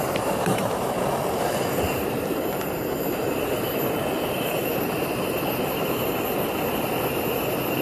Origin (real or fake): fake